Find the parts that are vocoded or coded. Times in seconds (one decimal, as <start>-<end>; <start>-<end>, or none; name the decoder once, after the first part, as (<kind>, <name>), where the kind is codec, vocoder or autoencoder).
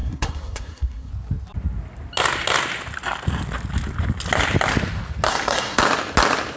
0.0-1.1 (codec, SNAC); 5.3-5.8